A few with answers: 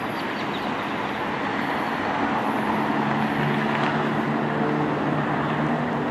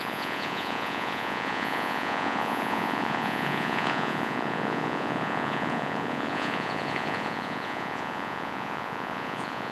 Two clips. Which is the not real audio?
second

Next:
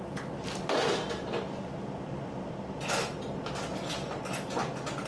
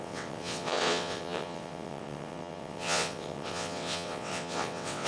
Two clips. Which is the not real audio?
second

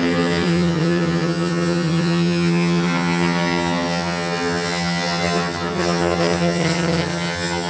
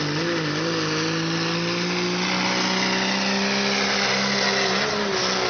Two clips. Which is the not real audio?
first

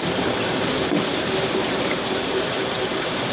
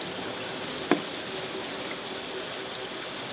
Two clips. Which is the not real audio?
first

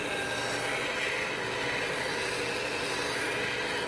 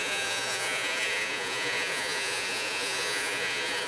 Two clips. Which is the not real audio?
second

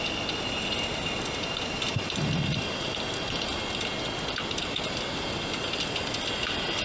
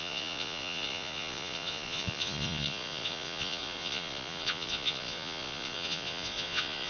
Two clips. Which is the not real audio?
second